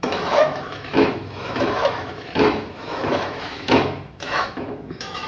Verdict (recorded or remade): remade